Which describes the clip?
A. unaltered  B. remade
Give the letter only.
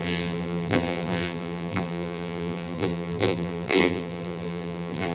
B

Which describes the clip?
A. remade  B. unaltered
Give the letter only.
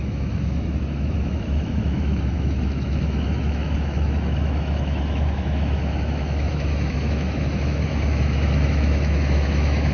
A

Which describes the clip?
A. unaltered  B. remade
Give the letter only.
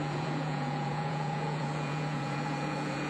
B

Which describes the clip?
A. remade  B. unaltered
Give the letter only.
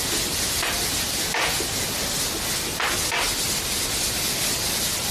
B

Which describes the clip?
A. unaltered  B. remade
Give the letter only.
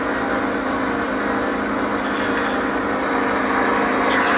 A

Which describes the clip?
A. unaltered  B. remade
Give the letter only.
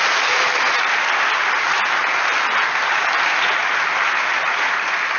A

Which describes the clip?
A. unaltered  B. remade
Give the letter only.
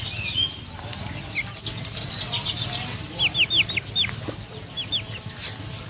A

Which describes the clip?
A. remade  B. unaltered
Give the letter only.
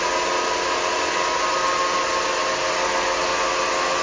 B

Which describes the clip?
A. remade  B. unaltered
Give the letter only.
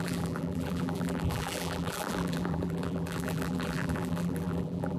A